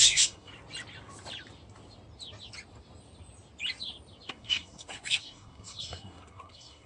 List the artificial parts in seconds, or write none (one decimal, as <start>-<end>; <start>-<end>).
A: 0.0-0.5; 4.3-6.9